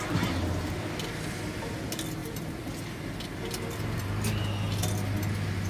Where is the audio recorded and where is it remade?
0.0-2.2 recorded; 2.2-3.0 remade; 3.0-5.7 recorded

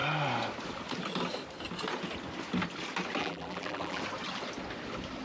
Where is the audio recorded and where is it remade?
0.0-3.2 recorded; 3.2-4.0 remade; 4.0-5.2 recorded

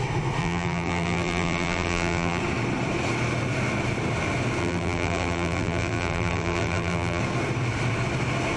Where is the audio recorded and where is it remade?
0.0-0.4 recorded; 0.4-2.4 remade; 2.4-4.6 recorded; 4.6-7.2 remade; 7.2-8.6 recorded

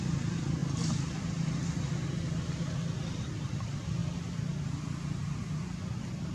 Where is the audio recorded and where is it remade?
0.0-0.6 remade; 0.6-3.2 recorded; 3.2-6.3 remade

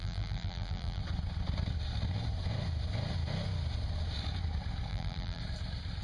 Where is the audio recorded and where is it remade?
0.0-1.0 remade; 1.0-4.9 recorded; 4.9-5.4 remade; 5.4-6.0 recorded

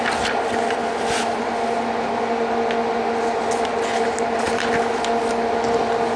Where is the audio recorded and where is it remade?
0.0-6.2 recorded